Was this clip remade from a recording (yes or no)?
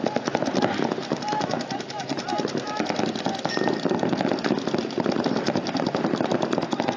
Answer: no